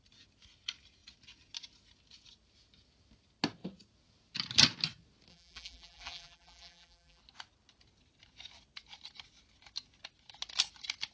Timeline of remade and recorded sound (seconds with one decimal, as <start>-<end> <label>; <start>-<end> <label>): 0.0-5.3 recorded; 5.3-7.2 remade; 7.2-11.1 recorded

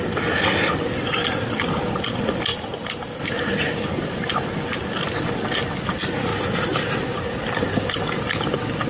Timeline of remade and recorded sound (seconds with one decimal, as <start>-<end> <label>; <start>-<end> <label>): 0.0-2.5 recorded; 2.5-3.2 remade; 3.2-8.9 recorded

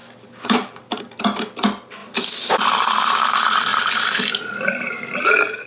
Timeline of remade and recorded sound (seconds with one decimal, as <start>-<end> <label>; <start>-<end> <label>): 0.0-5.7 recorded

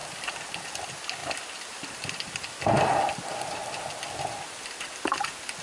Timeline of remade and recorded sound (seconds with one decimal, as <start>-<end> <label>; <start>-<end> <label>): 0.0-0.7 remade; 0.7-1.2 recorded; 1.2-2.5 remade; 2.5-5.6 recorded

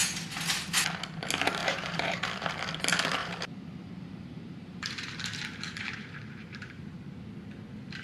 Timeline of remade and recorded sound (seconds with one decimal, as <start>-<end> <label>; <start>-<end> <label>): 0.0-1.6 recorded; 1.6-2.3 remade; 2.3-3.2 recorded; 3.2-7.0 remade; 7.0-8.0 recorded

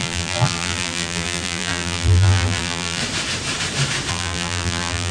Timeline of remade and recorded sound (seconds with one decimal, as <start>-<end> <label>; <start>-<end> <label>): 0.0-3.0 remade; 3.0-4.1 recorded; 4.1-5.1 remade

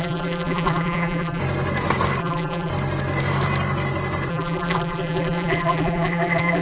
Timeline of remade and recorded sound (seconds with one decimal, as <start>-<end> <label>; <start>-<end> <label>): 0.0-1.4 remade; 1.4-2.2 recorded; 2.2-2.7 remade; 2.7-4.3 recorded; 4.3-6.6 remade

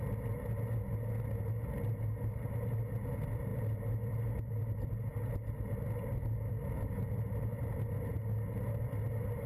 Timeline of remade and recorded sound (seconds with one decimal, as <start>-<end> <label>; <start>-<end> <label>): 0.0-9.5 recorded